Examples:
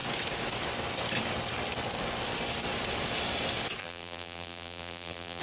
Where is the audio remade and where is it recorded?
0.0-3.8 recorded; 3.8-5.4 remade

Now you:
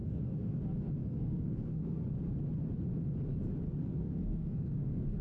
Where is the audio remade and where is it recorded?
0.0-0.6 remade; 0.6-1.0 recorded; 1.0-2.0 remade; 2.0-3.8 recorded; 3.8-5.2 remade

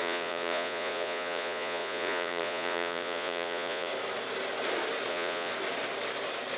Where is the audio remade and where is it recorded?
0.0-3.9 remade; 3.9-5.1 recorded; 5.1-5.5 remade; 5.5-6.6 recorded

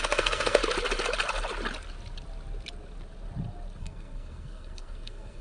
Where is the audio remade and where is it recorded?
0.0-0.6 remade; 0.6-3.8 recorded; 3.8-5.4 remade

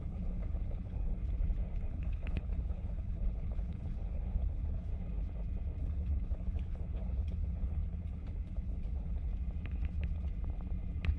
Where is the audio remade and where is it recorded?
0.0-1.2 remade; 1.2-1.9 recorded; 1.9-4.9 remade; 4.9-5.8 recorded; 5.8-9.3 remade; 9.3-11.2 recorded